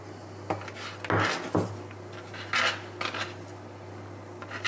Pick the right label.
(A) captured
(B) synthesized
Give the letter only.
A